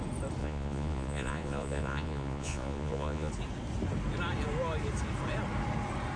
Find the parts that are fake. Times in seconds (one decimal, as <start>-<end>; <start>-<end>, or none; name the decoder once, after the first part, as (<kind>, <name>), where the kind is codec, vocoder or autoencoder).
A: 0.4-3.3 (vocoder, Vocos)